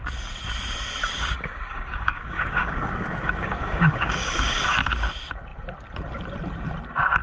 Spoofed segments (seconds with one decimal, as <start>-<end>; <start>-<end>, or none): 1.0-4.6